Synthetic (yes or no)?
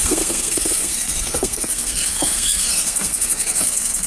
yes